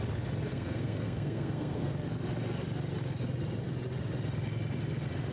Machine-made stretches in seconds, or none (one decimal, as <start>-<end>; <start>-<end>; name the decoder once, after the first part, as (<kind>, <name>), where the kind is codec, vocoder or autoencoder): 0.5-1.9 (codec, SNAC)